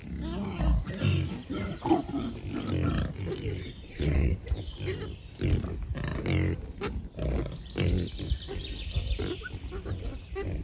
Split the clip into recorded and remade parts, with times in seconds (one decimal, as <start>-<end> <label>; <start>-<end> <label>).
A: 0.0-3.6 recorded; 3.6-4.4 remade; 4.4-10.6 recorded

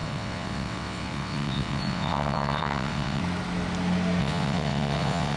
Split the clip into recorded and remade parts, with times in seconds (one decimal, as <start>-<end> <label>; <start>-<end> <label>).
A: 0.0-3.2 remade; 3.2-4.2 recorded; 4.2-5.4 remade

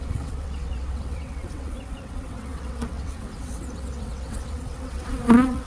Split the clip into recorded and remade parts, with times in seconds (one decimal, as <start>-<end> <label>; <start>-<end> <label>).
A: 0.0-5.7 remade

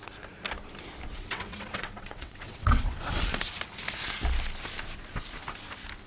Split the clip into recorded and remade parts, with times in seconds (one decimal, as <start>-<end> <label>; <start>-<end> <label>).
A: 0.0-1.1 recorded; 1.1-3.2 remade; 3.2-6.1 recorded

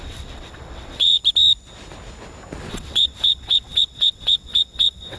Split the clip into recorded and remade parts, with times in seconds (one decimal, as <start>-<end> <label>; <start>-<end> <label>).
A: 0.0-1.2 remade; 1.2-2.7 recorded; 2.7-5.2 remade

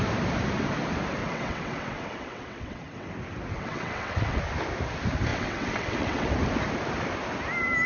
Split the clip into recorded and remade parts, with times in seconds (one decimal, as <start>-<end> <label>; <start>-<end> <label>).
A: 0.0-1.2 recorded; 1.2-3.1 remade; 3.1-3.5 recorded; 3.5-4.4 remade; 4.4-5.3 recorded; 5.3-6.3 remade; 6.3-7.9 recorded

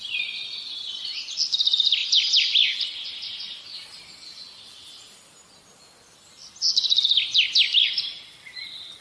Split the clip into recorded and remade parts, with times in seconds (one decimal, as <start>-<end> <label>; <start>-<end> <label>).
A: 0.0-9.0 recorded

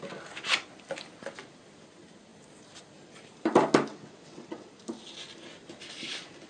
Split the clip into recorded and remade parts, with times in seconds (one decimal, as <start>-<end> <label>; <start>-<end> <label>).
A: 0.0-3.9 recorded; 3.9-4.7 remade; 4.7-6.5 recorded